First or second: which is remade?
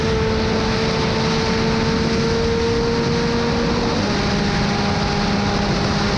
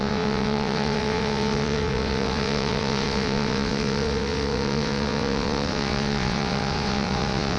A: second